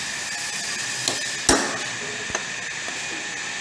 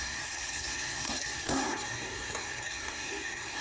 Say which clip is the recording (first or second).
first